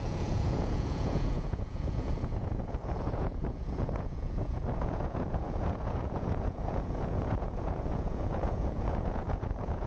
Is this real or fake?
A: fake